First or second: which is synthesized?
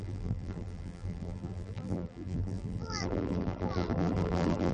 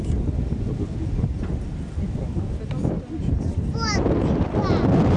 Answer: first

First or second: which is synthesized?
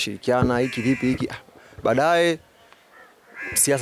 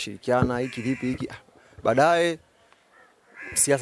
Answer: second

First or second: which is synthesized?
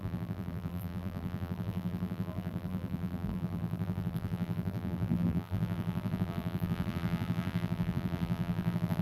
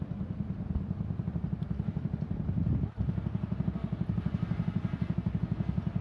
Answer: first